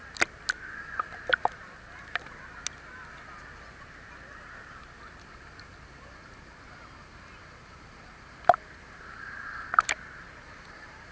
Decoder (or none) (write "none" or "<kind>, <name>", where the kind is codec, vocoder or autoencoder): none